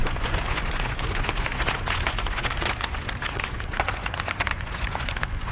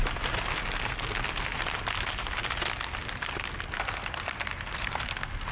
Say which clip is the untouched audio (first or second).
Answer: second